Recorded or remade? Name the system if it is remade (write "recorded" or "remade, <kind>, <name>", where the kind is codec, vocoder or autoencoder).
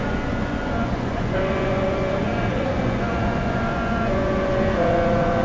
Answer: remade, vocoder, Vocos